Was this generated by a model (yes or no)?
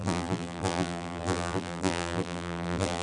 yes